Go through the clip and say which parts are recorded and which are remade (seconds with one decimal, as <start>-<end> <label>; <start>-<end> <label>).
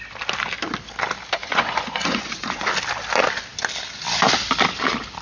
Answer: 0.0-1.4 recorded; 1.4-2.7 remade; 2.7-5.2 recorded